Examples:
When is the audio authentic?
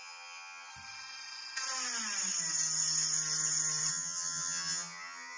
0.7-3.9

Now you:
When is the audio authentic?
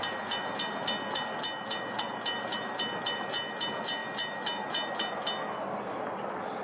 0.0-6.6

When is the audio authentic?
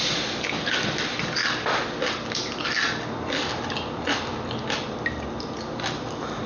0.0-6.5